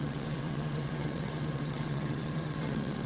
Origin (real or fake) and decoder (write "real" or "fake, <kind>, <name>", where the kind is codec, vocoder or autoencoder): fake, vocoder, WaveNeXt